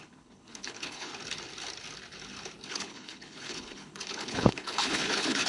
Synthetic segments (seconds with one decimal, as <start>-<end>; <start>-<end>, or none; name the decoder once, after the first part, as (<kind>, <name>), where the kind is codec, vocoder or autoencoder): 0.0-1.1 (codec, HILCodec); 2.7-5.5